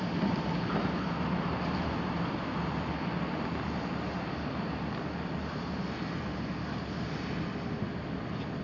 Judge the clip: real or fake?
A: real